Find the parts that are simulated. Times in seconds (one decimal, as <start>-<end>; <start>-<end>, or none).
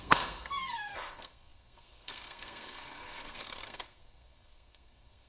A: 0.0-5.3